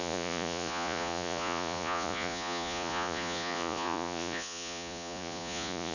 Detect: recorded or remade remade